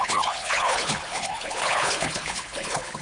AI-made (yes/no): yes